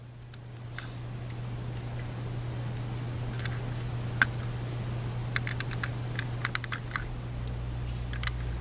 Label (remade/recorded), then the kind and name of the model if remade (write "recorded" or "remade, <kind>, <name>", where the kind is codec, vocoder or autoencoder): recorded